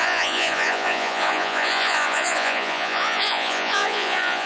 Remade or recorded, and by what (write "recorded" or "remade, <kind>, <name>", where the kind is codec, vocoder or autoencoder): remade, vocoder, Vocos